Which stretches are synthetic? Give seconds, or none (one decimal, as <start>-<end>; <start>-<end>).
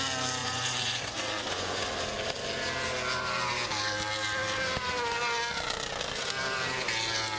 0.4-1.9